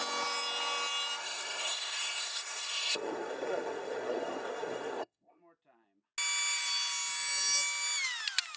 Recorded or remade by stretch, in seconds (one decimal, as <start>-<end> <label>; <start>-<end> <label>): 0.0-1.2 recorded; 1.2-5.4 remade; 5.4-8.6 recorded